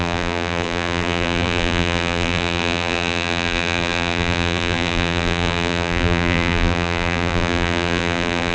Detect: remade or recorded remade